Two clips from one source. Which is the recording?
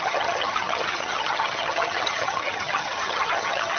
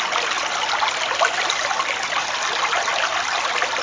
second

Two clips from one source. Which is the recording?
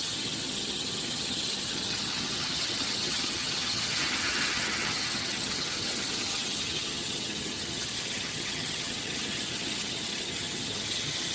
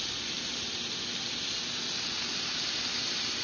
second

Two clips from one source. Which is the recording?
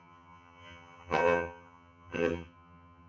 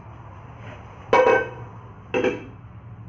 second